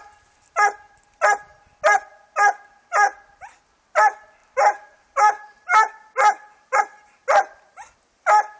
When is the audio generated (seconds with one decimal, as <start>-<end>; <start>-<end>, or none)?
4.4-6.8

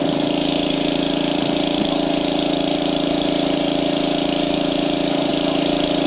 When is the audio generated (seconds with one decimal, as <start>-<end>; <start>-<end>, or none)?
0.0-6.1

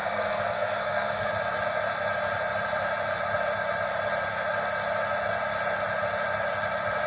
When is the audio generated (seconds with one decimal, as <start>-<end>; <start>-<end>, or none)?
0.0-1.3